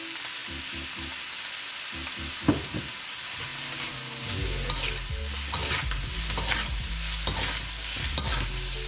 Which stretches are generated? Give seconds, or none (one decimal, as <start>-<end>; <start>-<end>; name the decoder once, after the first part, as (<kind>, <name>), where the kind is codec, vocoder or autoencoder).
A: none